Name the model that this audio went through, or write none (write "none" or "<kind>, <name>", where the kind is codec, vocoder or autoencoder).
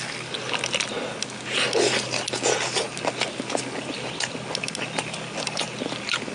none